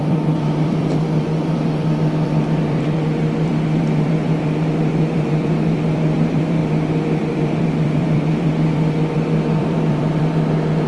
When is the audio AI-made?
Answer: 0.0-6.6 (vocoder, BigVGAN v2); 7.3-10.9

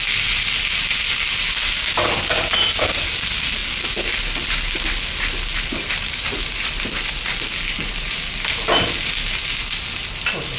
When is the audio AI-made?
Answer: none

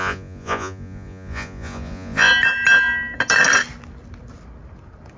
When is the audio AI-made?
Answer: 0.0-2.3 (vocoder, Vocos)

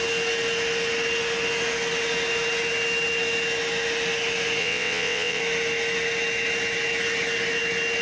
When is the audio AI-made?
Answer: 4.6-5.4 (vocoder, WaveNeXt)

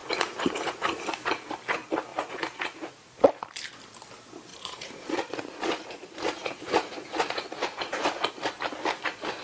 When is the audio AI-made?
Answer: 0.0-1.0 (vocoder, Vocos); 2.1-3.1; 4.5-8.3